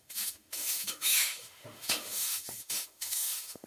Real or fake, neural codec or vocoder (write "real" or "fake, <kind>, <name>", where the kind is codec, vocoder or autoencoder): fake, autoencoder, DAC-VAE